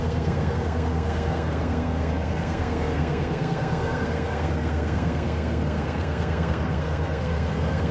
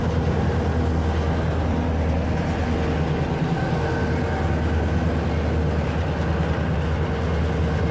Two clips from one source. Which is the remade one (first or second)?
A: first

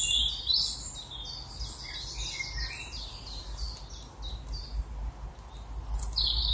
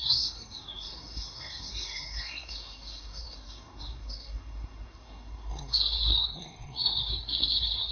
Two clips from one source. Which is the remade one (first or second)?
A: second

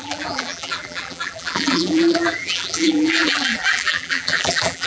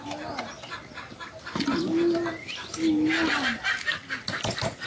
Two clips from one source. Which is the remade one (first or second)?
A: first